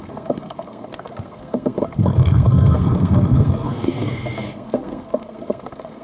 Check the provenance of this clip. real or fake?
fake